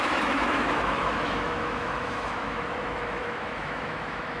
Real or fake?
fake